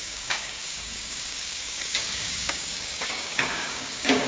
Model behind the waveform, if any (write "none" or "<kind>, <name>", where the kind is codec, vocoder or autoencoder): codec, DAC